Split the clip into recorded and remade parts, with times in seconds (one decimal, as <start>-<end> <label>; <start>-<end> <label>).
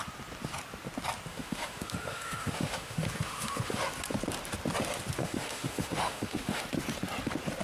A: 0.0-1.3 recorded; 1.3-3.8 remade; 3.8-5.2 recorded; 5.2-6.6 remade; 6.6-7.6 recorded